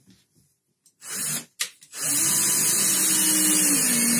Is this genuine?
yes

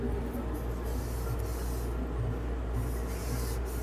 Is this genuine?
yes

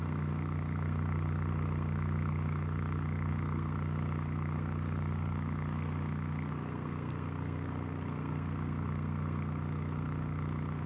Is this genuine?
no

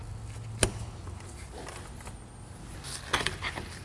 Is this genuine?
yes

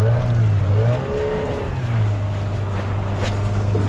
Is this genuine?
yes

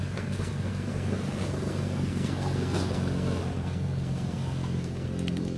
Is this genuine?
no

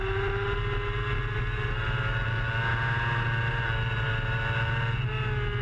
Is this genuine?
yes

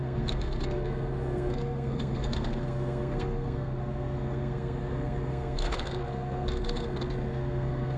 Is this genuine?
no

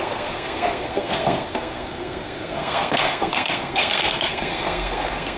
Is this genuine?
no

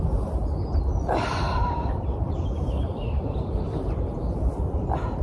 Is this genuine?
yes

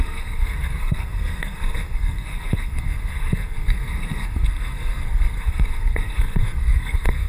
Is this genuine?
no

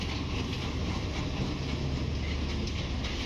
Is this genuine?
yes